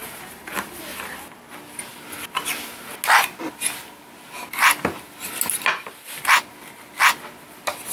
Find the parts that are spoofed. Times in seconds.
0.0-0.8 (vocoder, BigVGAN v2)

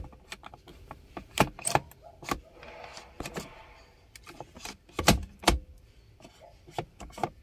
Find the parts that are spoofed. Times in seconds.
0.7-1.4 (vocoder, BigVGAN v2)

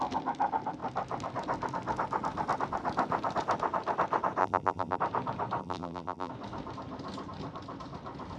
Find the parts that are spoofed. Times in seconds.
4.4-5.0 (vocoder, BigVGAN v2); 5.6-6.3

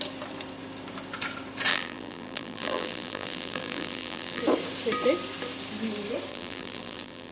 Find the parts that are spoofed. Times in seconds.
1.7-4.4 (vocoder, BigVGAN v2); 6.3-7.3

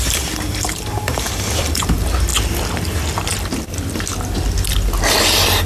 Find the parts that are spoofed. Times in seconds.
0.0-2.3 (vocoder, BigVGAN v2); 5.2-5.7

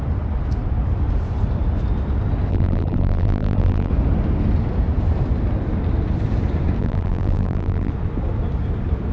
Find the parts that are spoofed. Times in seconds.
2.5-3.9 (vocoder, BigVGAN v2); 6.8-7.9

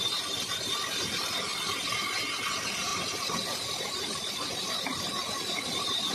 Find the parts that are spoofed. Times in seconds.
2.9-4.6 (vocoder, BigVGAN v2); 5.2-6.1